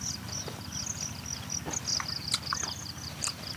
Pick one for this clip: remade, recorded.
recorded